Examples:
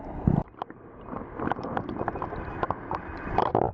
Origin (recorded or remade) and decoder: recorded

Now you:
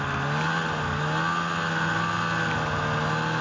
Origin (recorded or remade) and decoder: recorded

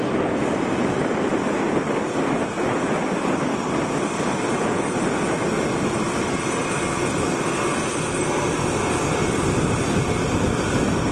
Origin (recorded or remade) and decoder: recorded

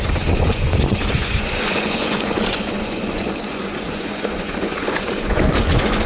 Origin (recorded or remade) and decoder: remade, vocoder, Vocos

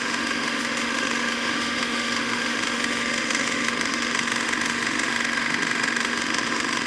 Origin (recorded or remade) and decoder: remade, autoencoder, DAC-VAE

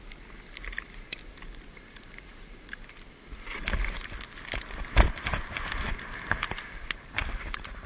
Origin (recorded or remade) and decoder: recorded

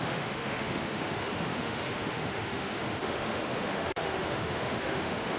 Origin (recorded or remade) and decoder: remade, autoencoder, DAC-VAE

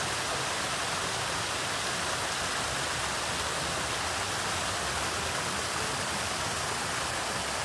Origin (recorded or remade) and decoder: recorded